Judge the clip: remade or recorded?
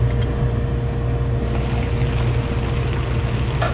recorded